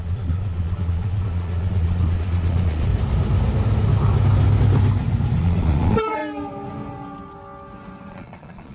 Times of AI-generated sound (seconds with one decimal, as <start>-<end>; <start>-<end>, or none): 0.0-2.9; 5.4-6.2; 8.1-8.7